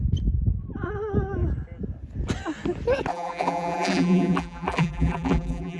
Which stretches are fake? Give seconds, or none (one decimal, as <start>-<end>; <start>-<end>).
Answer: 3.1-5.8